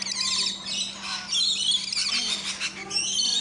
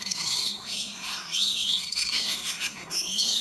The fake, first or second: second